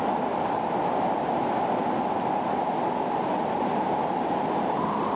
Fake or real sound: real